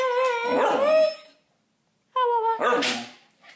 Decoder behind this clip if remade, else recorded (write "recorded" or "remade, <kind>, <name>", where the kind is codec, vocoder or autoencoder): recorded